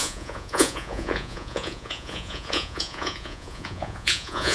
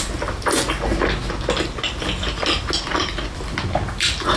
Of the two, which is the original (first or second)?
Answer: second